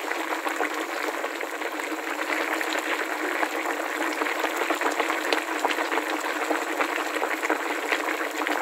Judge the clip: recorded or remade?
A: recorded